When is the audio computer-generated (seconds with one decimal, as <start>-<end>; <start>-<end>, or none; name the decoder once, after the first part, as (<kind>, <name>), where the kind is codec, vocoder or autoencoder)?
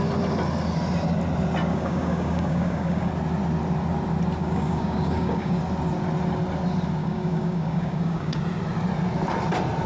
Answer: 1.7-3.1 (codec, DAC); 4.4-5.6; 7.0-8.4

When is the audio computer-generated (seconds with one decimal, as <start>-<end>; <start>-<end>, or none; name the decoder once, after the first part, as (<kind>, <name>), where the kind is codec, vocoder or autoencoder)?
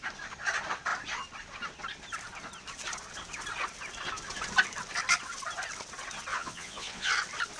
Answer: 6.3-7.1 (vocoder, Vocos)